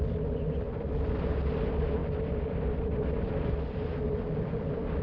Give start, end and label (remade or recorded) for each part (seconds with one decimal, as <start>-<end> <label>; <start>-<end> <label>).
0.0-5.0 recorded